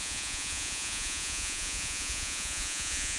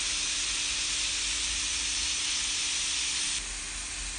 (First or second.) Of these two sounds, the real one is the second